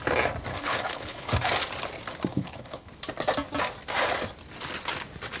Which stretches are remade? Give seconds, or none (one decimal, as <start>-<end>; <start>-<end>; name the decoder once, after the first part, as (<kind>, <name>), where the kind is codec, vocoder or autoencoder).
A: 0.5-1.5 (codec, HILCodec); 2.3-2.9